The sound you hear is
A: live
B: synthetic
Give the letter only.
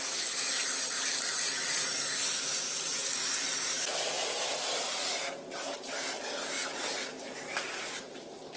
A